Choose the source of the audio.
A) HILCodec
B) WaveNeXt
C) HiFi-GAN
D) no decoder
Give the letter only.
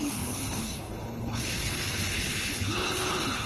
A